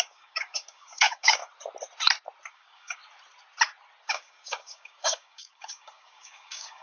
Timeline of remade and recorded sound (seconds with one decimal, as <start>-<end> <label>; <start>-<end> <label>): 0.0-1.4 remade; 1.4-2.5 recorded; 2.5-3.0 remade; 3.0-4.1 recorded; 4.1-6.8 remade